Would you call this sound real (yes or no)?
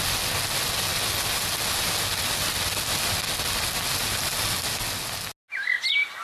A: yes